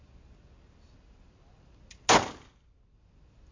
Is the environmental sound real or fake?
real